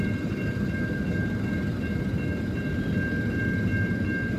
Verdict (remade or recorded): recorded